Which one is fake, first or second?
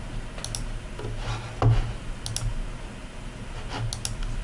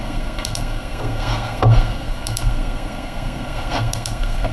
second